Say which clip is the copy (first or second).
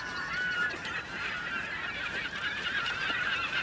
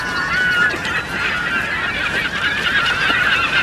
first